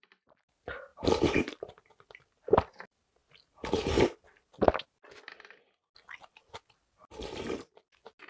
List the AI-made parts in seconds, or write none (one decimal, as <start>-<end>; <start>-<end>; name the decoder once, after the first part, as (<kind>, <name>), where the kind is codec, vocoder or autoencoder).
0.9-1.8 (vocoder, BigVGAN v2)